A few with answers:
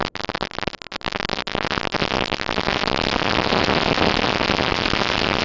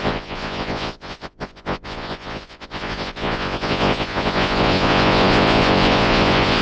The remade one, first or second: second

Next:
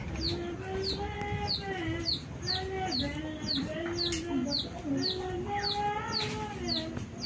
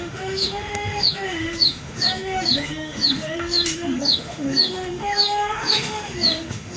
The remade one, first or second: second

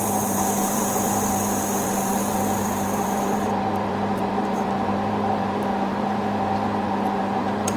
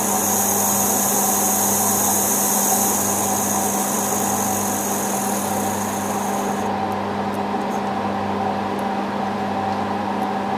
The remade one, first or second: first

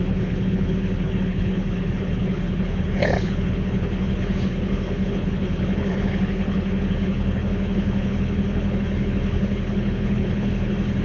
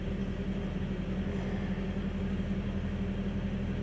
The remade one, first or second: first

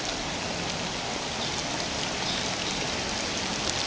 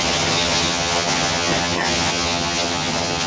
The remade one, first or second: second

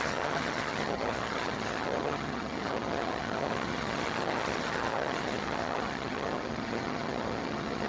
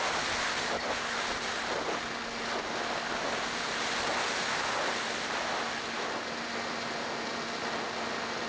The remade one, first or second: first